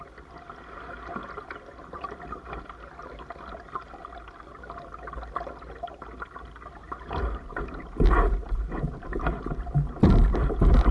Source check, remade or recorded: recorded